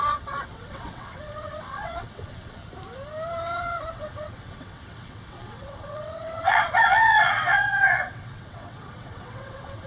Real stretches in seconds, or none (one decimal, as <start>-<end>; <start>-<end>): 2.6-3.9